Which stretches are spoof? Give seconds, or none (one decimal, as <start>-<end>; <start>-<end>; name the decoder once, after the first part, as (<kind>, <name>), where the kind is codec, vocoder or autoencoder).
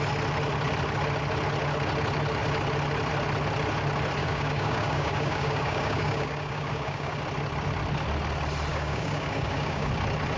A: 4.2-7.2 (codec, DAC); 8.7-9.9